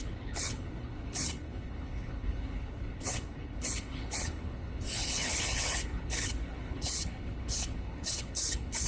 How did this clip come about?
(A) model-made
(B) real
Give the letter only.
A